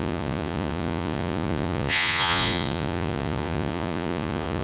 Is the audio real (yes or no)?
no